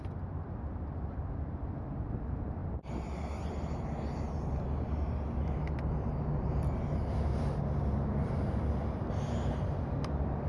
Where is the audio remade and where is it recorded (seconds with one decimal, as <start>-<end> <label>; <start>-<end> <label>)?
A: 0.0-10.5 recorded